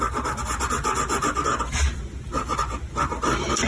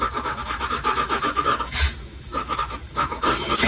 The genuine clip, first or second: first